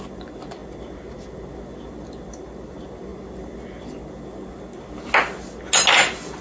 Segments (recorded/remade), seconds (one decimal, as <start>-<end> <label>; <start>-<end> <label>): 0.0-6.4 recorded